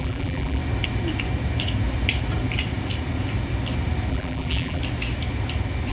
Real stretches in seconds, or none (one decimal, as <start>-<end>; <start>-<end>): 0.6-4.1; 4.8-5.9